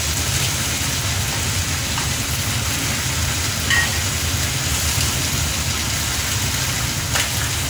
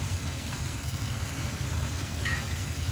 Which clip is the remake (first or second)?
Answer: second